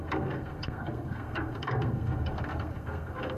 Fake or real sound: fake